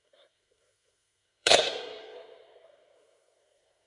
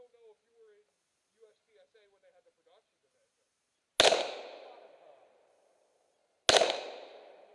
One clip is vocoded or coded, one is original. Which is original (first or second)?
second